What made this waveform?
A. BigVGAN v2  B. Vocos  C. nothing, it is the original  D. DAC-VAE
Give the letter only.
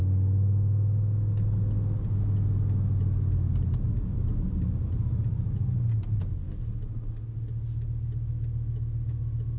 C